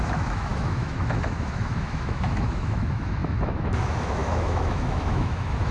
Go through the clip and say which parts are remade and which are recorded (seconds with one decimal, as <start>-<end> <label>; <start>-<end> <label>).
0.0-5.7 remade